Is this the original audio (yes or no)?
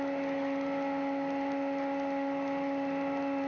yes